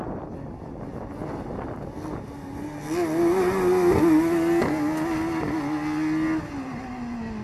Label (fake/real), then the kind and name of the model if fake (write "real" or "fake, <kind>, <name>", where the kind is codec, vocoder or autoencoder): real